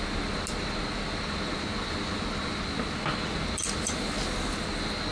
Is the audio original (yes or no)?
yes